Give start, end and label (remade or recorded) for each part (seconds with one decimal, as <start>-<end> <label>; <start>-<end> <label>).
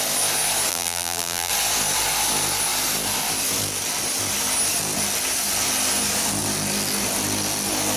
0.0-0.7 recorded; 0.7-1.5 remade; 1.5-8.0 recorded